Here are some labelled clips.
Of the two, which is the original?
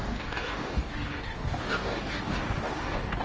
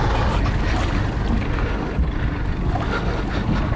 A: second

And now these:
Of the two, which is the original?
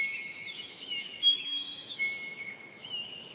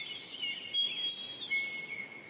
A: second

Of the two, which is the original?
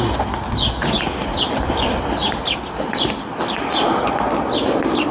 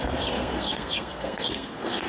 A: first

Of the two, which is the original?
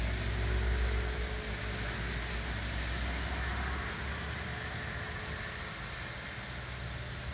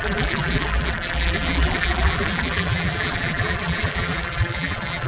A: first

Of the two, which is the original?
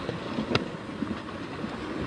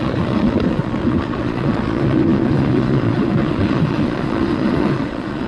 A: first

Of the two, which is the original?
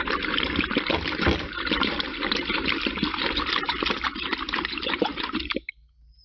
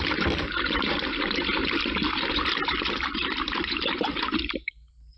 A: first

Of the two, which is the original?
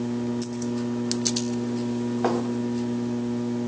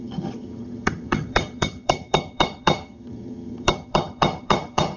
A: first